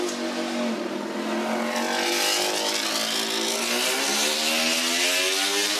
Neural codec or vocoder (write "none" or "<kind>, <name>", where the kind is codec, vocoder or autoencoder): none